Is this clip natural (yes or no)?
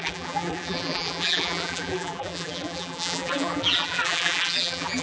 no